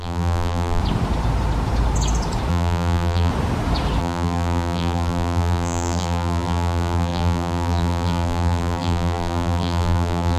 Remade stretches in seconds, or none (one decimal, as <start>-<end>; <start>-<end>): 0.0-0.8; 2.5-3.3; 4.0-10.4